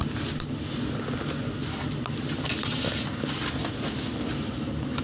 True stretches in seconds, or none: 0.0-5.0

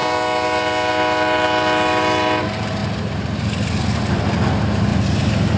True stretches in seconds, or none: 0.0-5.6

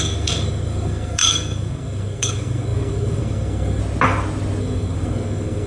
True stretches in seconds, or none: 3.8-4.6

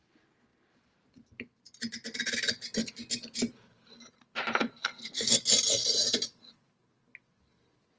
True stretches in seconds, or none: 0.0-4.6; 5.3-8.0

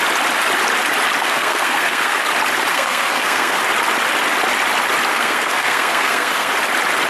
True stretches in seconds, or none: 0.0-1.2; 2.2-2.7; 3.6-5.1; 6.5-7.1

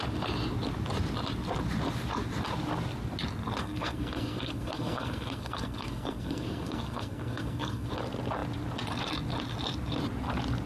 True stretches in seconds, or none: 0.0-3.6; 7.9-10.7

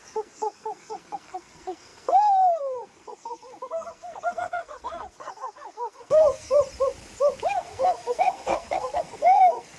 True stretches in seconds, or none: 6.6-7.5

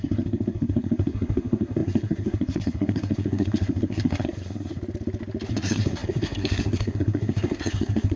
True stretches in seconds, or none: 4.8-5.5